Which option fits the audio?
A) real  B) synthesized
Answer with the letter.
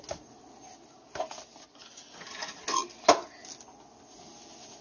A